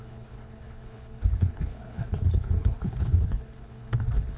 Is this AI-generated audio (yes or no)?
yes